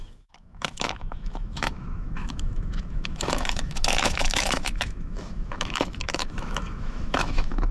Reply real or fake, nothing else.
fake